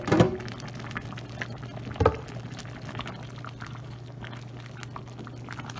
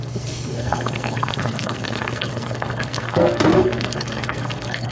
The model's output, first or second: second